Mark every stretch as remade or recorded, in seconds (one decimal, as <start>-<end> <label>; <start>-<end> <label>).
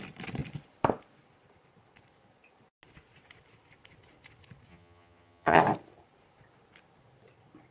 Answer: 0.0-4.7 recorded; 4.7-5.6 remade; 5.6-7.7 recorded